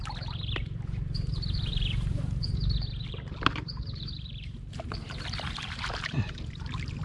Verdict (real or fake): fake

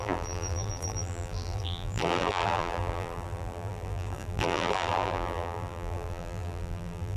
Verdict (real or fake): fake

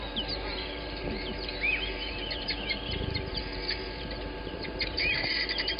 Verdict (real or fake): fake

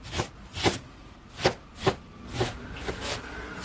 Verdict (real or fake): real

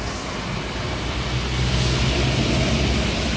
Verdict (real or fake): real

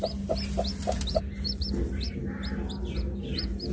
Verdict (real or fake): real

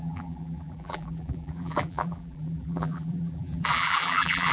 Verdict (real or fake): fake